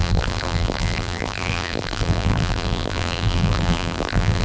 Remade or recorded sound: remade